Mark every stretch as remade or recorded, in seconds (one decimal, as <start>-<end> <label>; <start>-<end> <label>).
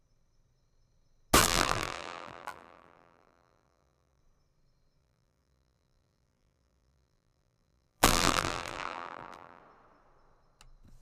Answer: 0.0-1.4 recorded; 1.4-4.2 remade; 4.2-5.0 recorded; 5.0-9.6 remade; 9.6-11.0 recorded